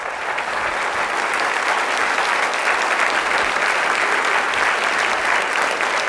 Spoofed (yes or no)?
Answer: no